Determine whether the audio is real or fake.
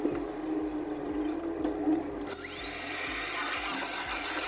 real